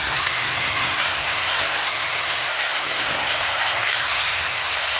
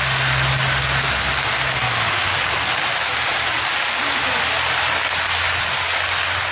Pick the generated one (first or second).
first